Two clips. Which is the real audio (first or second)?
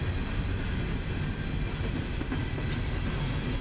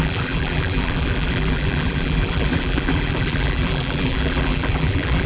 first